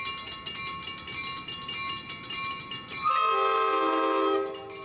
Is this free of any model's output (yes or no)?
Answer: yes